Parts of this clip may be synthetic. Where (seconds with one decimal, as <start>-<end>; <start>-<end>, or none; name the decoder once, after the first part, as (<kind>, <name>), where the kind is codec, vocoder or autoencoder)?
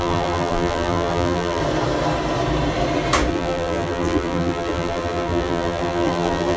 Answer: 0.0-1.6 (vocoder, BigVGAN v2); 3.3-6.6